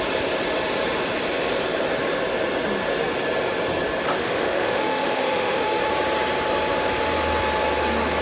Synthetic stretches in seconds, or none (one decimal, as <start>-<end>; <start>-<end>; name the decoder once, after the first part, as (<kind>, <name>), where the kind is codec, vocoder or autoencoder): 4.2-5.9 (autoencoder, DAC-VAE)